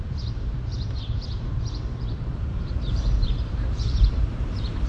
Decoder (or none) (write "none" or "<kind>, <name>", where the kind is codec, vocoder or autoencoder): vocoder, BigVGAN v2